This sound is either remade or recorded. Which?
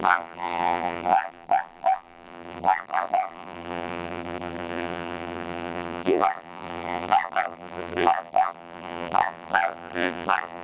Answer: remade